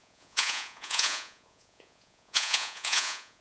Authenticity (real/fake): fake